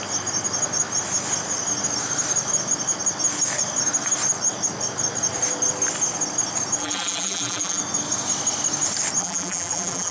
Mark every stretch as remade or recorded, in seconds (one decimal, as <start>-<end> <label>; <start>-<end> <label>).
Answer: 0.0-6.8 recorded; 6.8-7.8 remade; 7.8-9.2 recorded; 9.2-10.1 remade